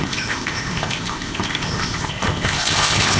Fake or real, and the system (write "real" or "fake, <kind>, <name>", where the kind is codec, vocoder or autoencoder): fake, codec, ZipCodec